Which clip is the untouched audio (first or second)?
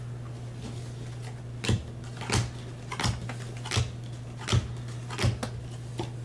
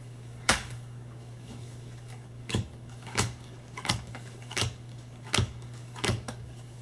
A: first